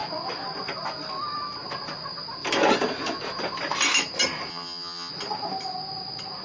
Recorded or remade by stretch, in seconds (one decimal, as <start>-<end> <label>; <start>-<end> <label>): 0.0-4.5 recorded; 4.5-5.1 remade; 5.1-6.4 recorded